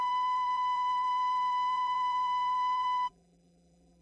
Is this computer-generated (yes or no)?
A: yes